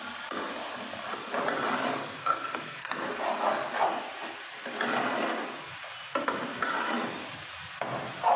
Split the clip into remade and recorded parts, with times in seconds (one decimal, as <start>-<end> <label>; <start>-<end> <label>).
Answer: 0.0-1.9 recorded; 1.9-3.1 remade; 3.1-8.4 recorded